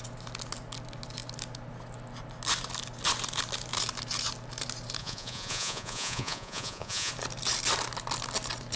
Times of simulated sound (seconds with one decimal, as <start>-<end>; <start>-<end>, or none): 5.0-7.1